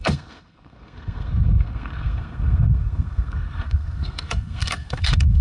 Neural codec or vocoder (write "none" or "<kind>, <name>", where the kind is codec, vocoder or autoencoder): codec, SNAC